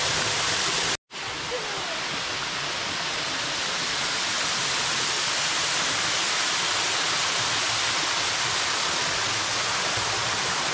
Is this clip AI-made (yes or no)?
no